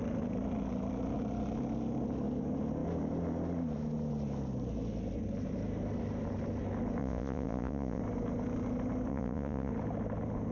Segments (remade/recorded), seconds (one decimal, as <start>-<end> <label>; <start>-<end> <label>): 0.0-7.0 recorded; 7.0-8.0 remade; 8.0-9.1 recorded; 9.1-9.7 remade; 9.7-10.5 recorded